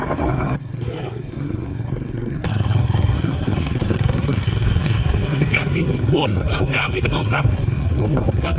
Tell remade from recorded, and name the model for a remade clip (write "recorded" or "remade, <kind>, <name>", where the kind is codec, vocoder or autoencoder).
remade, codec, SNAC